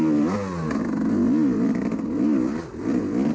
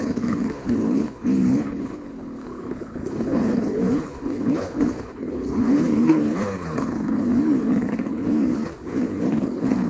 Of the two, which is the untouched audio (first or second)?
first